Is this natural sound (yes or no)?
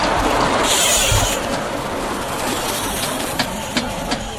yes